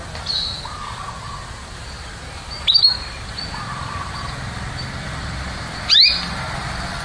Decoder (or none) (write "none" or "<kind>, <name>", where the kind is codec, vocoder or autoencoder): none